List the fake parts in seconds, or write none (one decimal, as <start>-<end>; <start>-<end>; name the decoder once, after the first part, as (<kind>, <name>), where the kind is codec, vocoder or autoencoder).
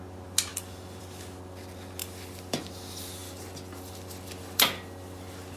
0.5-1.0 (vocoder, BigVGAN v2); 2.0-2.6; 3.2-5.6